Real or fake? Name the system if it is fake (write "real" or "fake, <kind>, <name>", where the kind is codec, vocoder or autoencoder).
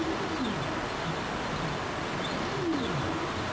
real